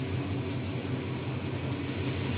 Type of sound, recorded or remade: recorded